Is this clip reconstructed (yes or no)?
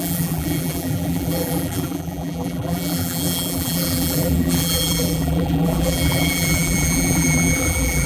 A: yes